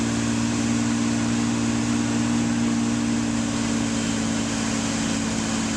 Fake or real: real